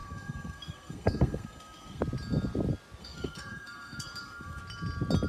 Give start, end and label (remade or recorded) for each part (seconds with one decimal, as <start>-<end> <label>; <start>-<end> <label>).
0.0-2.0 remade; 2.0-3.0 recorded; 3.0-4.6 remade; 4.6-5.3 recorded